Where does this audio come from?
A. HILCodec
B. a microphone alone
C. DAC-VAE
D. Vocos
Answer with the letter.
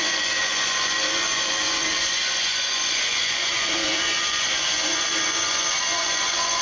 D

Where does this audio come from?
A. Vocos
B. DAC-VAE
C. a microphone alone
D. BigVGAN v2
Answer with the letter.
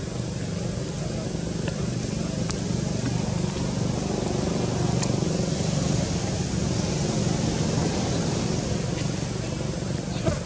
C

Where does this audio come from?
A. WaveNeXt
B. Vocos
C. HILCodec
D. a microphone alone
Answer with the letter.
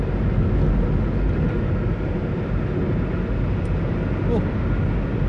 D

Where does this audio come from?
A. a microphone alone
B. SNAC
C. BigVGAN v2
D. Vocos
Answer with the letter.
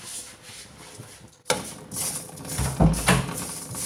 A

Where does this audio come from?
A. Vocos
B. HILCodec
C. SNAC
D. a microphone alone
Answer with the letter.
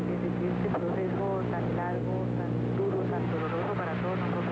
D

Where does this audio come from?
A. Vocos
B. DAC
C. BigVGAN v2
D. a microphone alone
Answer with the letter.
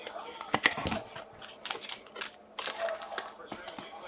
D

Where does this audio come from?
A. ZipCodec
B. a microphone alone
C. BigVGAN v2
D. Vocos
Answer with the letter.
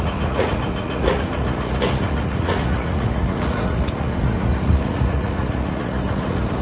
D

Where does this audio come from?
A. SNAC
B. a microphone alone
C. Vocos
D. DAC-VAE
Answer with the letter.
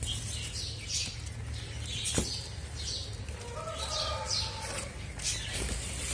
B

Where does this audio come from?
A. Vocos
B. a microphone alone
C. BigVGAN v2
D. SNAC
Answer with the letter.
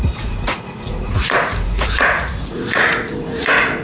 A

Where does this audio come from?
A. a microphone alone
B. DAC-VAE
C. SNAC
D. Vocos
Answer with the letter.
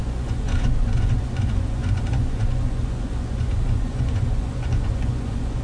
D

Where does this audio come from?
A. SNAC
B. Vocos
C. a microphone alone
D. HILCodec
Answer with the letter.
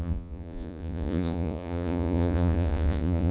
B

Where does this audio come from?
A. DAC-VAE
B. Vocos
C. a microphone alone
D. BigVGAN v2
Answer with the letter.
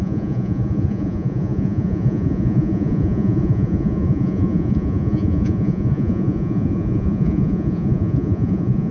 B